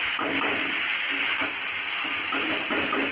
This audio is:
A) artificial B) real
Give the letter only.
B